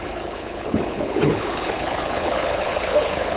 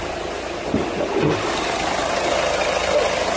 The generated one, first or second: first